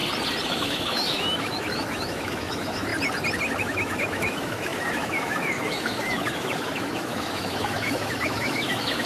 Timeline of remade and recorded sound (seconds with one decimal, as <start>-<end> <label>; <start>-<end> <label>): 0.0-0.5 recorded; 0.5-2.9 remade; 2.9-3.6 recorded; 3.6-9.1 remade